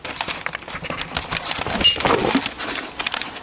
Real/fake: real